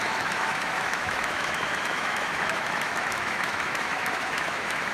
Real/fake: fake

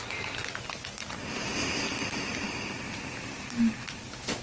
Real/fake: real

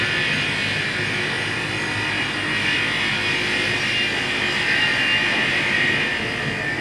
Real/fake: real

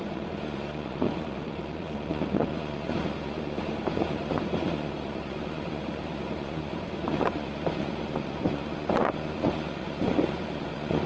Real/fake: fake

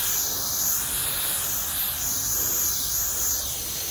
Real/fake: real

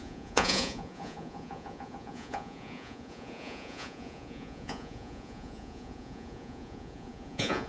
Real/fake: fake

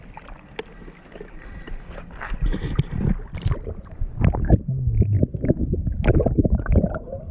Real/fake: real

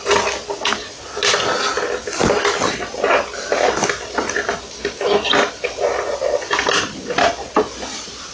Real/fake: real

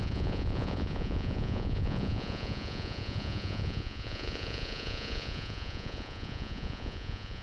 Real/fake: fake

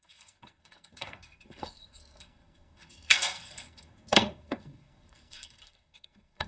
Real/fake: fake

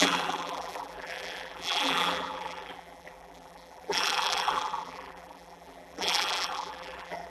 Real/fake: fake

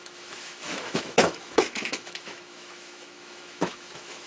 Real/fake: fake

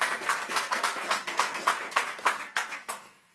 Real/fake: fake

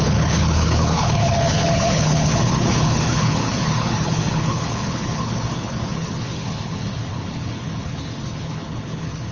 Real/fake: fake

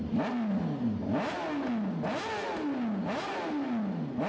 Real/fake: real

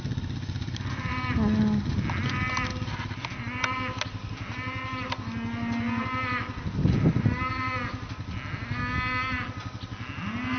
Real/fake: real